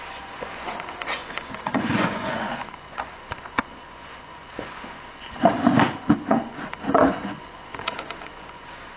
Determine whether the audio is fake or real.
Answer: fake